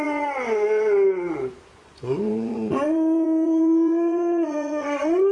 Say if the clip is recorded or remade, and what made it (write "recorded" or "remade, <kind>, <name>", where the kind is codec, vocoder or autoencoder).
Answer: remade, vocoder, Vocos